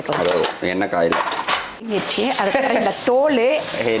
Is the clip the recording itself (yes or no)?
yes